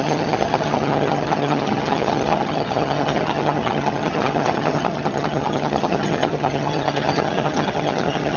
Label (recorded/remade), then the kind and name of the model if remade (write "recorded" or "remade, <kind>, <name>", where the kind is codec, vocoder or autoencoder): remade, vocoder, HiFi-GAN